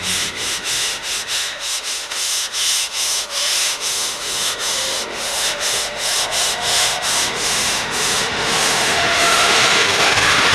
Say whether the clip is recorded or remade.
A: remade